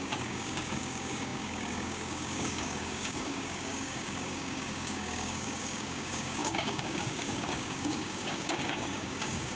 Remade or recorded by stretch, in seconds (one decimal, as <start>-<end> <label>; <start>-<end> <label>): 0.0-9.6 remade